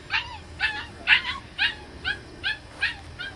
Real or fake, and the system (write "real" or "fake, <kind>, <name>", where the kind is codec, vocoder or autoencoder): real